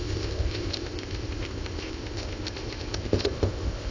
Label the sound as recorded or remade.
remade